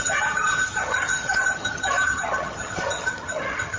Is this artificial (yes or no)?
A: yes